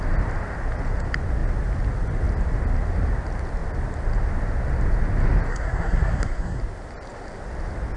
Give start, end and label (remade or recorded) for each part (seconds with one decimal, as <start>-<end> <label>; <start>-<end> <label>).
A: 0.0-5.5 recorded; 5.5-6.6 remade; 6.6-8.0 recorded